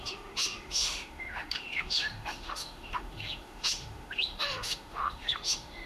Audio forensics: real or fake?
fake